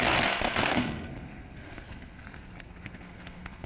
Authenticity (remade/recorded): remade